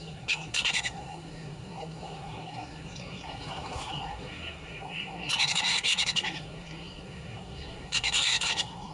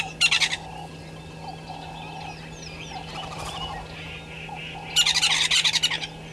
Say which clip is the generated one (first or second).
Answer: first